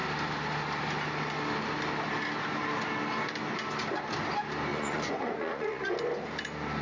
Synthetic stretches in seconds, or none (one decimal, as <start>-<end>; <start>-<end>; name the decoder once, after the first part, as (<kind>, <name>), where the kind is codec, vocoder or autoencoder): 4.7-5.9 (vocoder, Vocos)